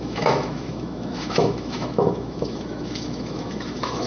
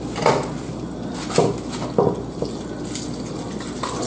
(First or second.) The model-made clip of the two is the first